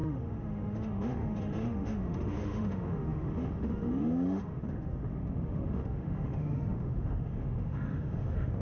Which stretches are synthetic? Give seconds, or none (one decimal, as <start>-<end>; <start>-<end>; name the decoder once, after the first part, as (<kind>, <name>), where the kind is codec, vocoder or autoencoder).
0.0-8.6 (autoencoder, DAC-VAE)